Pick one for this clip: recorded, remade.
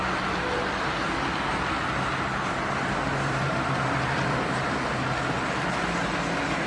recorded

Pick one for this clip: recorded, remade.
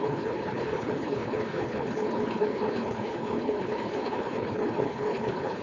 remade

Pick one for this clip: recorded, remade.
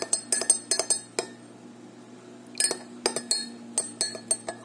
recorded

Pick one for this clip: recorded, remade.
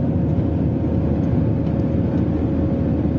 recorded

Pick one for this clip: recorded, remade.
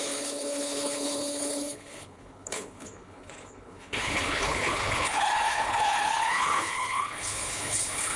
remade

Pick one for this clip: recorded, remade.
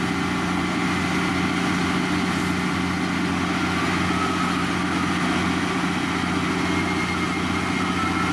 recorded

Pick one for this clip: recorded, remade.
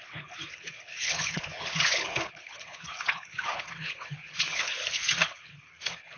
remade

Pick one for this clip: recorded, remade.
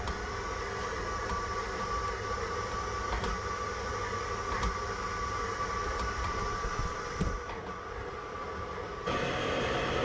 recorded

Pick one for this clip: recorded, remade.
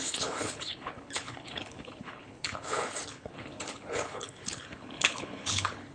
remade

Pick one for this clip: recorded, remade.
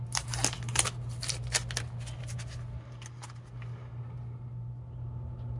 recorded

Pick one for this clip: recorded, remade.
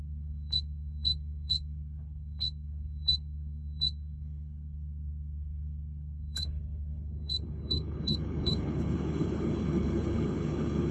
remade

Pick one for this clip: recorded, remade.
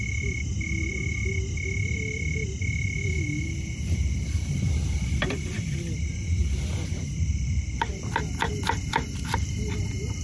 recorded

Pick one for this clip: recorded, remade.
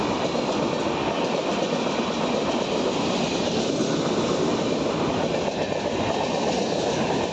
recorded